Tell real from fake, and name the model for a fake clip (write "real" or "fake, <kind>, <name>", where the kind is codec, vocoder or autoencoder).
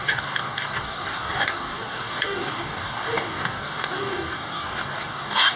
fake, codec, DAC